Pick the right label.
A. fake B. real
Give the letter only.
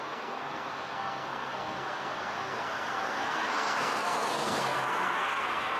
A